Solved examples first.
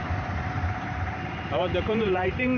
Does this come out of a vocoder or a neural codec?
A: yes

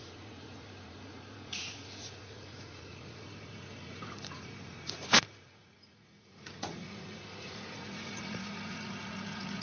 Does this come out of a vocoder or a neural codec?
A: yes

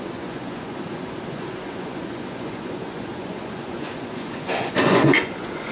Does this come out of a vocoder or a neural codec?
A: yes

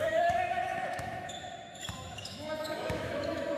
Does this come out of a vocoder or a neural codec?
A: yes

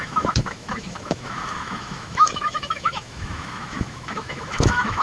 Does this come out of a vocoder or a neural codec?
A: yes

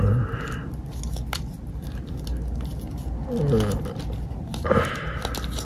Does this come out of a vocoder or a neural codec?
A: no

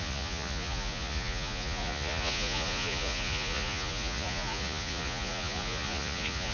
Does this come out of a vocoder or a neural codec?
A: yes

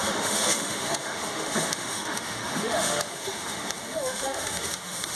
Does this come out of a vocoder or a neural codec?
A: yes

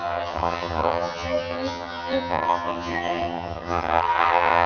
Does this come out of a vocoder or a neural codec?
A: yes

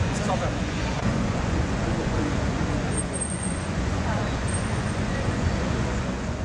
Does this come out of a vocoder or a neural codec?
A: yes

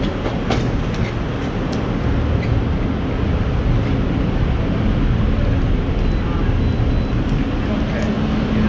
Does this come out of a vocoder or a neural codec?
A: no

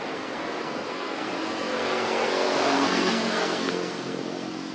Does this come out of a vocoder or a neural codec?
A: yes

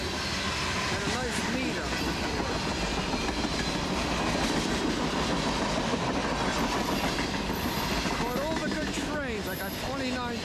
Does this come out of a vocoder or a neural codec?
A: no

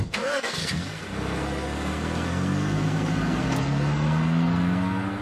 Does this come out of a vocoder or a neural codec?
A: yes